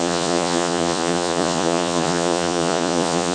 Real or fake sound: fake